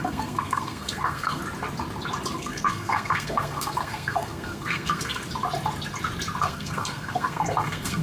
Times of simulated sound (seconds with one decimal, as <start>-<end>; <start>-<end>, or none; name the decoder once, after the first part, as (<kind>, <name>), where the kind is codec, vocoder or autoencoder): 0.0-1.4 (codec, SNAC); 2.4-5.2; 6.4-8.0